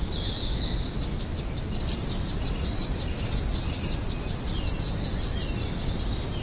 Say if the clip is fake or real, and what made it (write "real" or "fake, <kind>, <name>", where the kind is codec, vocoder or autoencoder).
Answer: real